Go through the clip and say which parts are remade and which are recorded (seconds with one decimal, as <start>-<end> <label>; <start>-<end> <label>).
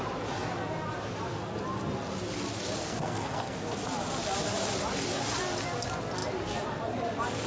0.0-2.8 recorded; 2.8-3.8 remade; 3.8-7.5 recorded